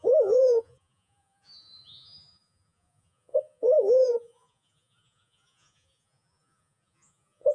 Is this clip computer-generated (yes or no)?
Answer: yes